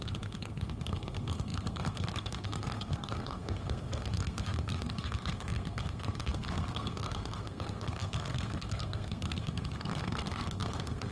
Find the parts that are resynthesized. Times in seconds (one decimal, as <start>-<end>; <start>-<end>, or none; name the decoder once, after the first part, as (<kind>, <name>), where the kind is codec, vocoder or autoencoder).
0.0-11.1 (codec, SNAC)